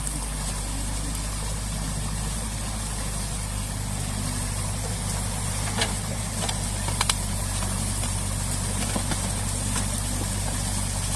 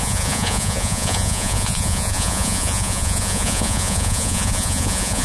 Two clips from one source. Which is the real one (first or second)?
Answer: first